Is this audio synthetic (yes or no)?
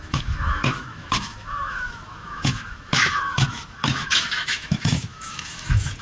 yes